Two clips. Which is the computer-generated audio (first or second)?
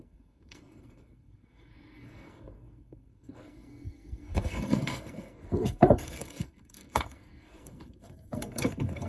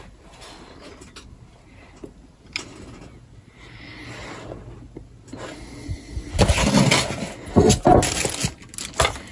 first